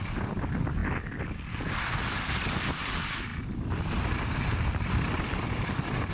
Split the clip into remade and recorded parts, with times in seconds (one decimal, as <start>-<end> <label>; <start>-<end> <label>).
0.0-6.1 recorded